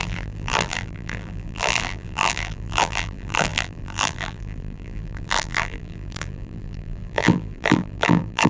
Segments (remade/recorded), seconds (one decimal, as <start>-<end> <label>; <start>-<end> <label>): 0.0-8.5 remade